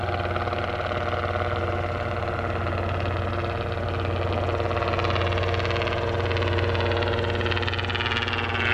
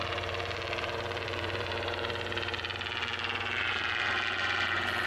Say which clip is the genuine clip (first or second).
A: first